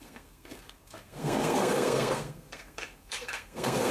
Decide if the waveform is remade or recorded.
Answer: remade